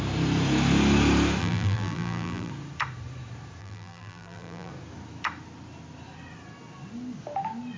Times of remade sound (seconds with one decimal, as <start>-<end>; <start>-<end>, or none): 1.4-2.5; 3.6-4.7